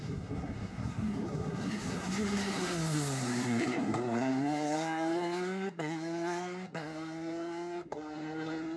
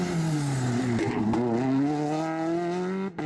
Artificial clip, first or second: first